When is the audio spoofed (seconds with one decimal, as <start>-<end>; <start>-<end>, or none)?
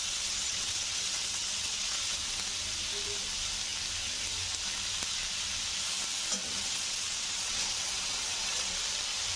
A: 0.0-2.0; 6.4-8.8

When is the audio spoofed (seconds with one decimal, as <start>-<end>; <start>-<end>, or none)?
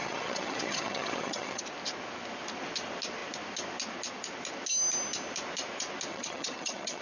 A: 0.0-1.6; 6.1-7.0